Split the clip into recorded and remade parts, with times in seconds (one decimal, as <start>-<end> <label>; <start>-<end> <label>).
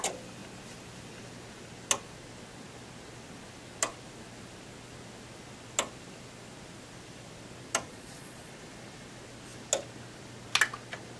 0.0-7.9 recorded; 7.9-8.5 remade; 8.5-11.2 recorded